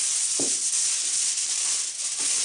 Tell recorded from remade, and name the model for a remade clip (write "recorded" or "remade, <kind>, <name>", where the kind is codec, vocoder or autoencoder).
remade, vocoder, BigVGAN v2